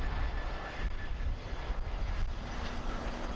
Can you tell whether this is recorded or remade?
recorded